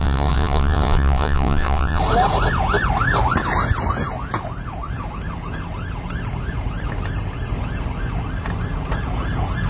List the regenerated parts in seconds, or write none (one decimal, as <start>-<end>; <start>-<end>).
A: 0.0-2.0